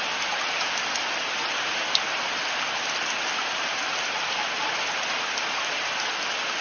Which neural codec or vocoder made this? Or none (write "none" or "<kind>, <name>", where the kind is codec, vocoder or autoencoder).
none